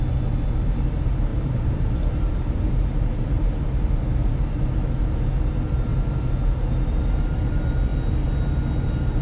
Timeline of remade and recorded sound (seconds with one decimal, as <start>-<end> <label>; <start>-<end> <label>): 0.0-1.3 recorded; 1.3-4.3 remade; 4.3-9.2 recorded